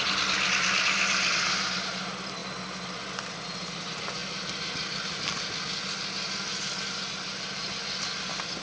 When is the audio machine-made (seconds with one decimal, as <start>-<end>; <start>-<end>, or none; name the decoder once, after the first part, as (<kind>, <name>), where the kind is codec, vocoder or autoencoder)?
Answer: none